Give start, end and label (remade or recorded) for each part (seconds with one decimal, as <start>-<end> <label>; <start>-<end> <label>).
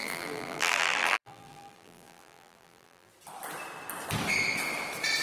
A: 0.0-3.1 remade; 3.1-5.2 recorded